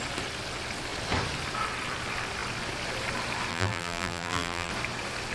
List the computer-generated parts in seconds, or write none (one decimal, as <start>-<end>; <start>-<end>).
3.5-4.7